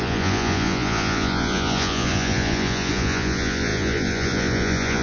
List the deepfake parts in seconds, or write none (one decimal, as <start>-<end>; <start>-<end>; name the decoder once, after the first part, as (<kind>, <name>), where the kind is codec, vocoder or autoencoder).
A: 0.0-5.0 (vocoder, Vocos)